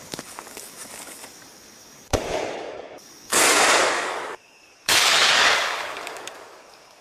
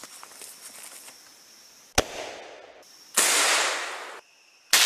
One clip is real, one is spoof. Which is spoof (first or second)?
first